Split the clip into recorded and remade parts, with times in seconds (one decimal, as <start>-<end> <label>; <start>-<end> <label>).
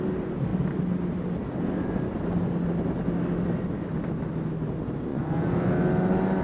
0.0-5.1 recorded; 5.1-5.7 remade; 5.7-6.4 recorded